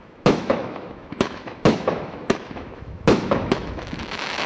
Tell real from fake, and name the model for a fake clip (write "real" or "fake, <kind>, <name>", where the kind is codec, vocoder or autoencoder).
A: fake, autoencoder, DAC-VAE